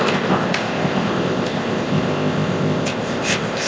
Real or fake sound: fake